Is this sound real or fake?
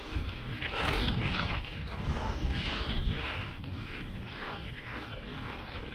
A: fake